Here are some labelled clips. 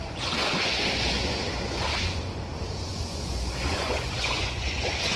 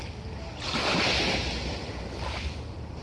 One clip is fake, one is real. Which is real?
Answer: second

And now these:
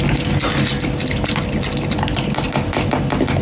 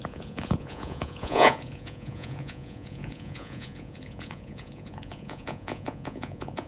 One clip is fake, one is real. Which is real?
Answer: first